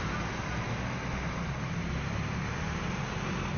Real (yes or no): yes